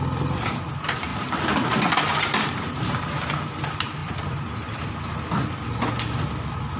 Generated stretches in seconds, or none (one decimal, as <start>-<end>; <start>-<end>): none